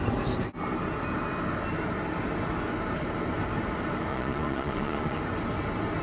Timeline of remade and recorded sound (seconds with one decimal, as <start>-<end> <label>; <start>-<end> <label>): 0.0-4.1 recorded; 4.1-5.2 remade; 5.2-6.0 recorded